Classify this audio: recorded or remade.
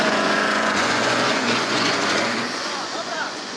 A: remade